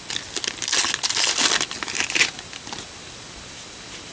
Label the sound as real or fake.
real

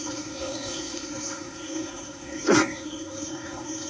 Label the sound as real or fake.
fake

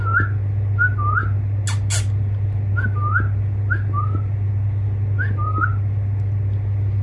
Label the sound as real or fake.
real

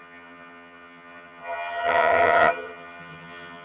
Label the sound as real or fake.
fake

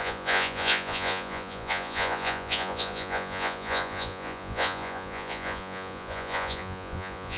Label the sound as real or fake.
fake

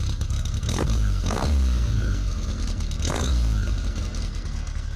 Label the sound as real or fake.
fake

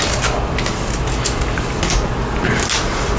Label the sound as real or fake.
real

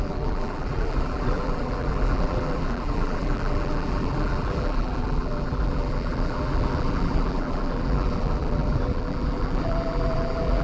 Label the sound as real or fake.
fake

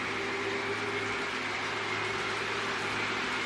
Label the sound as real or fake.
real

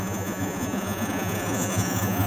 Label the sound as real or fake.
fake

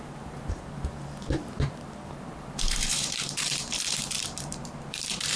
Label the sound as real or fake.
fake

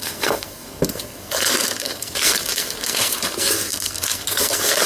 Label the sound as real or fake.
fake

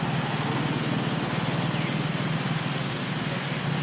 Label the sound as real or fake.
real